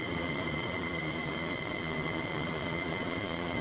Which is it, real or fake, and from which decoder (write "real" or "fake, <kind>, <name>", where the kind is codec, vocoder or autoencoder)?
fake, vocoder, Vocos